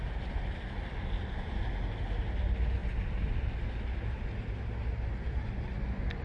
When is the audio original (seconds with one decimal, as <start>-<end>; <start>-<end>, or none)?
0.0-6.2